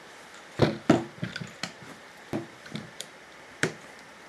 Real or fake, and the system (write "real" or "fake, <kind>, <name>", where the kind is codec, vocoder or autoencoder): fake, vocoder, BigVGAN v2